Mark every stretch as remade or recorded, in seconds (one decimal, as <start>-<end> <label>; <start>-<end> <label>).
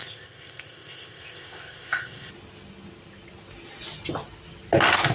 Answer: 0.0-2.3 remade; 2.3-5.1 recorded